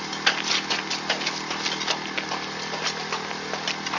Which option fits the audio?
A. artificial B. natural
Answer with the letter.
B